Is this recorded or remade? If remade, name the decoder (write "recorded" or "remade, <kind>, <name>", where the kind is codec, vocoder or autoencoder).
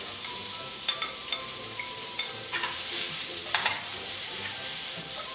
remade, vocoder, BigVGAN v2